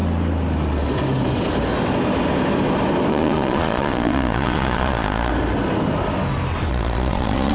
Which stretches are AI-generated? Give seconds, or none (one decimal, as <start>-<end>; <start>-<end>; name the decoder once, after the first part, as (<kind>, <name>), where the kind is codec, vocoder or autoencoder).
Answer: 3.1-5.3 (vocoder, Vocos); 6.7-7.5